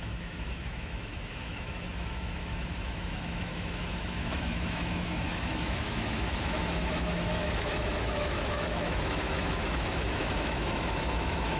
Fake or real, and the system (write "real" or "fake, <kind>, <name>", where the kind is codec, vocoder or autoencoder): fake, autoencoder, DAC-VAE